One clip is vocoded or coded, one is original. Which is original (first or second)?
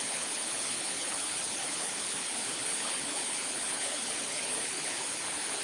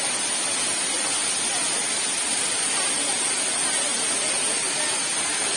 second